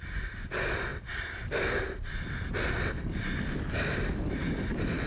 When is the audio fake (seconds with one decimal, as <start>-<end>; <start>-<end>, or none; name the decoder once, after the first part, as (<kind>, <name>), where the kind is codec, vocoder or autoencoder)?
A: none